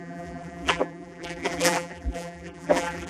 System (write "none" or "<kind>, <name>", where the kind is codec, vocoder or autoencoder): vocoder, BigVGAN v2